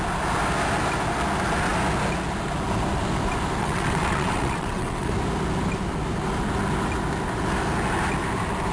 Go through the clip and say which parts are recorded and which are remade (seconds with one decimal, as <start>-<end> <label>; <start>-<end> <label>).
0.0-3.6 recorded; 3.6-5.1 remade; 5.1-8.7 recorded